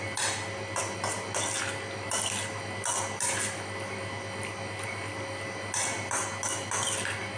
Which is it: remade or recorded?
recorded